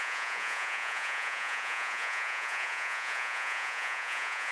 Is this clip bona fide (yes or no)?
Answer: no